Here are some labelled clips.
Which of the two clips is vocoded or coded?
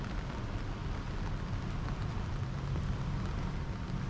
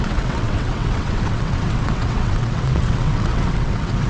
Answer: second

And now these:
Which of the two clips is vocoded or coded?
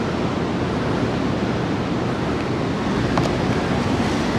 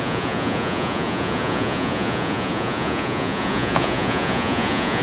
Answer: second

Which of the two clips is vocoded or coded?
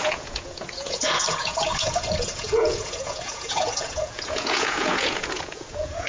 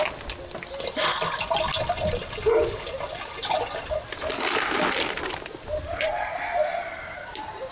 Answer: first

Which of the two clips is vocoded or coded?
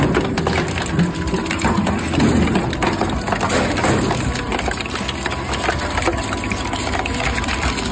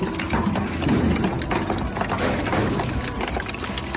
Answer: second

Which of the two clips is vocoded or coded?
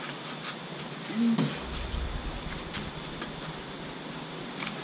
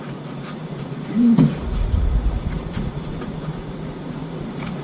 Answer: second